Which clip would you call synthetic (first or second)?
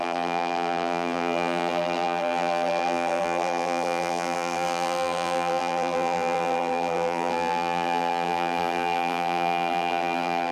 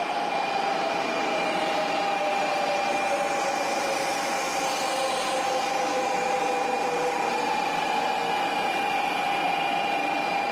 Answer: first